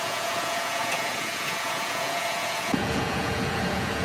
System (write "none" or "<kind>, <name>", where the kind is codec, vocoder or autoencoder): vocoder, Vocos